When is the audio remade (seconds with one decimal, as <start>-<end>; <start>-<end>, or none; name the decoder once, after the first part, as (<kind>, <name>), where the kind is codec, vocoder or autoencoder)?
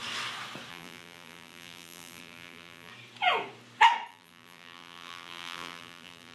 0.7-2.9 (vocoder, BigVGAN v2); 4.1-6.3